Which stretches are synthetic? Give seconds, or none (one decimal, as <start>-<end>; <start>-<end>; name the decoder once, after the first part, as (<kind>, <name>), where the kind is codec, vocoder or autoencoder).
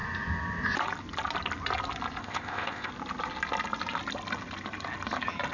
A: 2.2-2.9 (codec, ZipCodec)